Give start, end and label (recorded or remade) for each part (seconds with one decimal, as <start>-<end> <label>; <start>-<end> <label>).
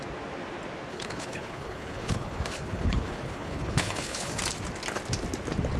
0.0-0.9 recorded; 0.9-4.4 remade; 4.4-5.8 recorded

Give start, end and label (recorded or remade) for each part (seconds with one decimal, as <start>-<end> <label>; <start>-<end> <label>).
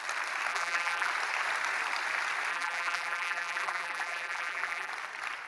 0.0-0.5 recorded; 0.5-1.1 remade; 1.1-2.5 recorded; 2.5-4.9 remade; 4.9-5.5 recorded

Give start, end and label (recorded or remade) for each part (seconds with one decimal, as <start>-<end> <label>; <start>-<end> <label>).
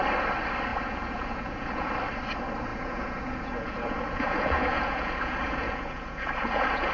0.0-0.7 recorded; 0.7-1.9 remade; 1.9-2.7 recorded; 2.7-6.9 remade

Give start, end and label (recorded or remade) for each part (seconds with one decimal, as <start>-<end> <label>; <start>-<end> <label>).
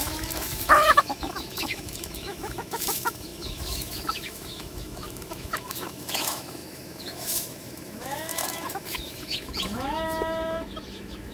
0.0-11.3 remade